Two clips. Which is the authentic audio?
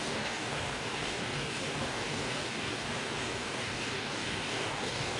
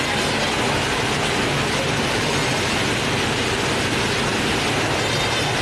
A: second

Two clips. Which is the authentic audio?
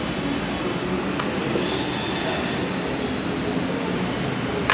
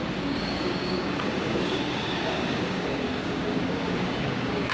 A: first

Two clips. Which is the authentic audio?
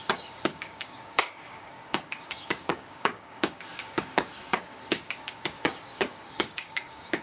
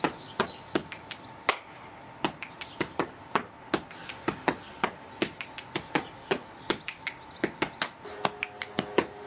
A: second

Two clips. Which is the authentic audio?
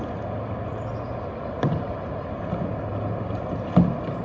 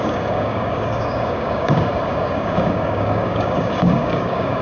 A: first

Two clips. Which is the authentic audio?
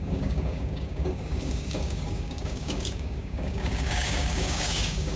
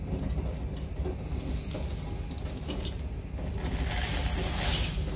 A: second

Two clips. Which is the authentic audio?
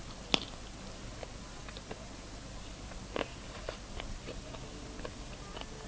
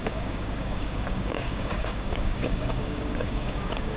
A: first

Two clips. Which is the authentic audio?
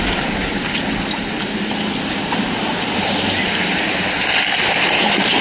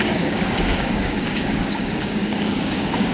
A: first